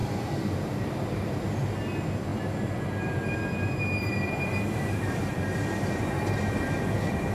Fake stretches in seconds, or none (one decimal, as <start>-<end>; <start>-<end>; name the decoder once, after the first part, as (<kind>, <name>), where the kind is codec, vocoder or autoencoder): 0.0-1.4 (vocoder, BigVGAN v2)